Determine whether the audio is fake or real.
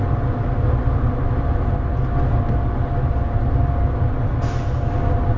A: real